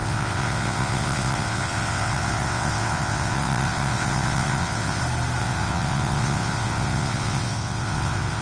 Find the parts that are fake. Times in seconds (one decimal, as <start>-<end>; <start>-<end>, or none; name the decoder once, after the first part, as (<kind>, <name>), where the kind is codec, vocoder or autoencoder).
0.0-5.0 (vocoder, WaveNeXt); 5.4-8.4